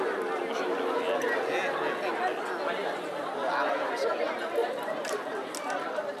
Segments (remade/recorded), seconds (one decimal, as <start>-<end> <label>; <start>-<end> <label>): 0.0-4.6 recorded; 4.6-5.5 remade; 5.5-6.2 recorded